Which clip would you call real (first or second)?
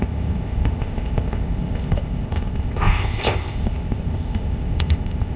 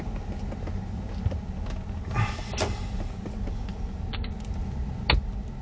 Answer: second